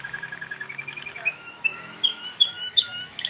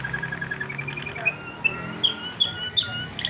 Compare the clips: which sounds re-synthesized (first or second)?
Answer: first